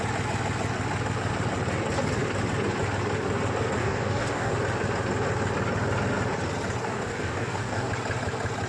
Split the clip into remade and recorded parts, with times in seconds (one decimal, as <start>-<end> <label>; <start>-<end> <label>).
0.0-3.8 recorded; 3.8-4.5 remade; 4.5-6.8 recorded; 6.8-7.9 remade; 7.9-8.7 recorded